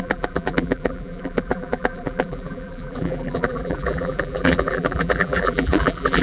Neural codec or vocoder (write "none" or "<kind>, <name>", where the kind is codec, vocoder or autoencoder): vocoder, BigVGAN v2